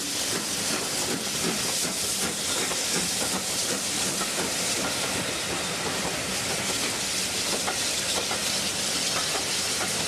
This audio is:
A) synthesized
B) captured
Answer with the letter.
A